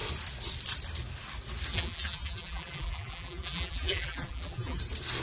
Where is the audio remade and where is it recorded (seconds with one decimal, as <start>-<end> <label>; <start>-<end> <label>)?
0.0-1.7 recorded; 1.7-4.8 remade; 4.8-5.2 recorded

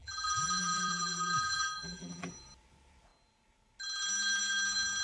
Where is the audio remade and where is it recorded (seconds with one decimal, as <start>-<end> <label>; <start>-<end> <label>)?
0.0-2.3 remade; 2.3-5.0 recorded